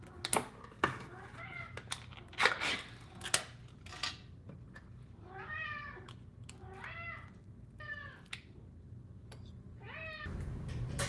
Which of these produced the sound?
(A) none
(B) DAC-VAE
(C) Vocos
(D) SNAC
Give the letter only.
A